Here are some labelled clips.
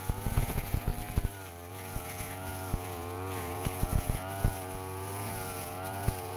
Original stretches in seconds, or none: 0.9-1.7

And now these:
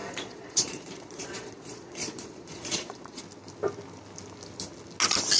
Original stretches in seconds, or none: 3.2-5.4

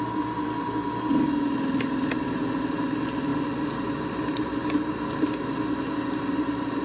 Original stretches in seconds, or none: 0.0-6.8